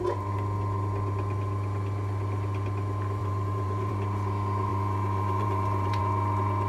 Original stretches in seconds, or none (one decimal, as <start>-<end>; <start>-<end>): 0.0-3.2; 3.9-4.7; 6.0-6.7